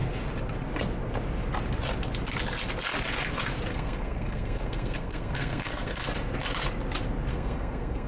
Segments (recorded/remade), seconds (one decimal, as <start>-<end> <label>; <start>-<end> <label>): 0.0-3.7 recorded; 3.7-6.0 remade; 6.0-7.3 recorded; 7.3-8.1 remade